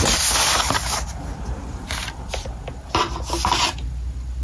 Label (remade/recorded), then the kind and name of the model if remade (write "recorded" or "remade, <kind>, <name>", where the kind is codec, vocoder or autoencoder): recorded